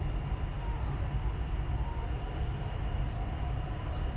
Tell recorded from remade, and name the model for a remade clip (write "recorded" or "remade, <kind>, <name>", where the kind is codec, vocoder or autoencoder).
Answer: remade, vocoder, BigVGAN v2